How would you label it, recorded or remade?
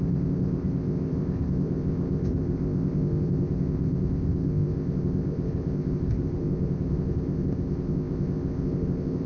remade